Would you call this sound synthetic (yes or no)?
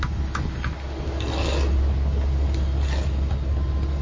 no